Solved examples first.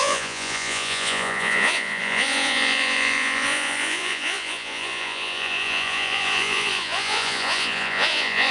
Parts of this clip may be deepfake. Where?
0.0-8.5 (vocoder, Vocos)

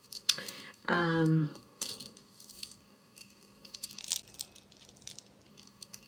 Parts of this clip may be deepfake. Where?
0.0-4.0 (codec, DAC); 5.5-6.1

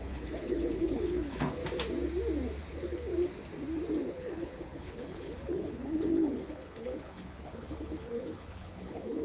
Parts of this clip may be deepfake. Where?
0.0-1.6 (codec, HILCodec); 2.7-3.1; 4.0-9.2

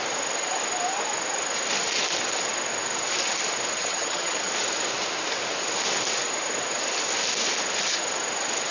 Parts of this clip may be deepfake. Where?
3.8-4.5 (vocoder, HiFi-GAN)

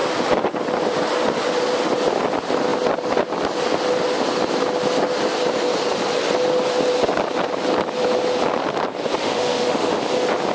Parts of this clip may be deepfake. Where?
9.2-10.0 (autoencoder, DAC-VAE)

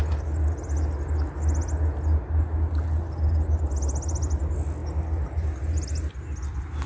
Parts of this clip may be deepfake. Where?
none